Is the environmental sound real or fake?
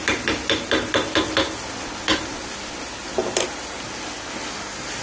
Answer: real